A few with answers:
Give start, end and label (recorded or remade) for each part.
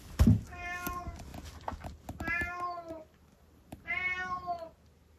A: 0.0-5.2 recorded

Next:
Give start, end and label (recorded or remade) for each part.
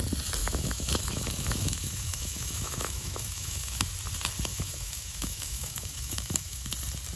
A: 0.0-0.4 recorded; 0.4-3.9 remade; 3.9-4.5 recorded; 4.5-6.7 remade; 6.7-7.2 recorded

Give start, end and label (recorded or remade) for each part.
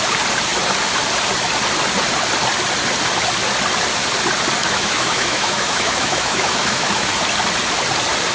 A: 0.0-4.6 recorded; 4.6-7.1 remade; 7.1-8.3 recorded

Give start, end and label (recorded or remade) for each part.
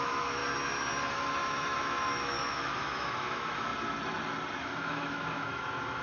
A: 0.0-0.4 remade; 0.4-1.1 recorded; 1.1-3.7 remade; 3.7-4.6 recorded; 4.6-6.0 remade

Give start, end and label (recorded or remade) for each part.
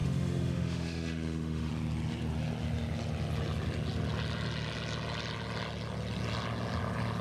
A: 0.0-1.7 remade; 1.7-7.2 recorded